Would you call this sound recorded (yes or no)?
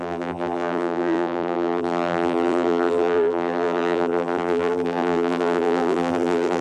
no